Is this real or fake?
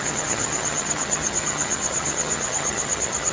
fake